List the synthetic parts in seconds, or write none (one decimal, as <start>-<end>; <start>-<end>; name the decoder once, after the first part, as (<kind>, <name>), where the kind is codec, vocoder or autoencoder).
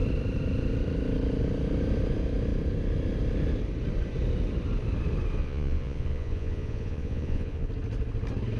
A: 5.4-7.7 (vocoder, Vocos)